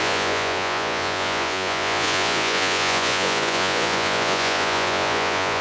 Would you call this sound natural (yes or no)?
no